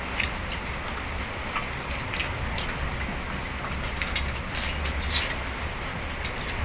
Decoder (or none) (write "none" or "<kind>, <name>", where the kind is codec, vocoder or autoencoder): none